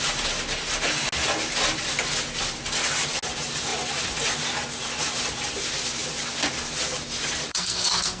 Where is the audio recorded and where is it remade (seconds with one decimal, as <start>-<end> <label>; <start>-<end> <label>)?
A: 0.0-7.5 recorded; 7.5-8.2 remade